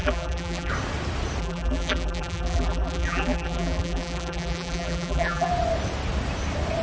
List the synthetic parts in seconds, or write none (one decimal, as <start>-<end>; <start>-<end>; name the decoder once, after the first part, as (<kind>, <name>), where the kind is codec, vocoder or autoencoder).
0.0-0.7 (vocoder, BigVGAN v2); 1.4-5.5